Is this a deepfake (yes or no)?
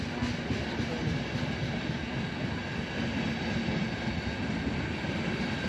no